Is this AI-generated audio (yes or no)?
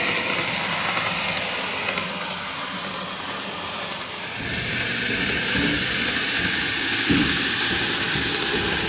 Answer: no